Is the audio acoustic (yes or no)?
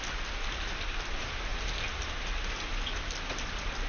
yes